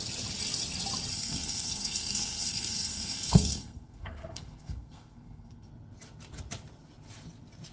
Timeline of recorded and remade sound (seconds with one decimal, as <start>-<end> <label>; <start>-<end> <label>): 0.0-1.1 recorded; 1.1-5.7 remade; 5.7-7.7 recorded